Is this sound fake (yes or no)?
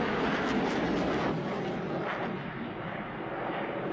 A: no